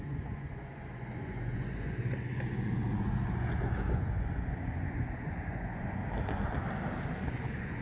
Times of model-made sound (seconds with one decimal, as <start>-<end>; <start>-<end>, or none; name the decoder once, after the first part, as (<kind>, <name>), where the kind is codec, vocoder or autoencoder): 0.0-6.0 (vocoder, Vocos); 7.3-7.8